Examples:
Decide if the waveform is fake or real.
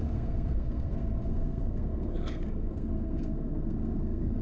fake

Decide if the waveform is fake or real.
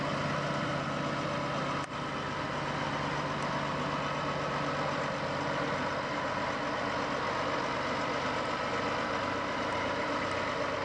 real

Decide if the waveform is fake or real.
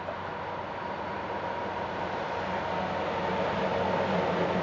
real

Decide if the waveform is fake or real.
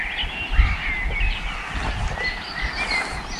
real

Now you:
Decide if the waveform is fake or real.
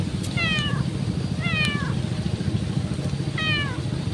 real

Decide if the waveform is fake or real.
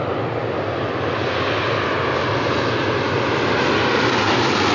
real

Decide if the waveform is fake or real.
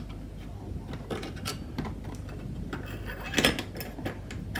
real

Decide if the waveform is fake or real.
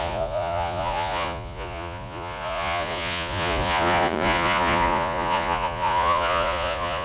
fake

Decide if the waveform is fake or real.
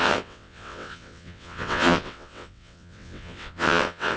fake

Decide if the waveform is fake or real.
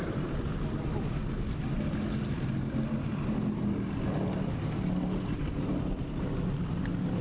real